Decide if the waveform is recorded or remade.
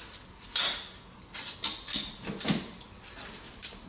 recorded